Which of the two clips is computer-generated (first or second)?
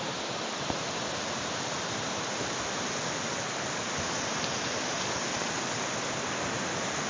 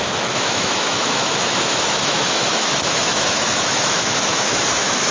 second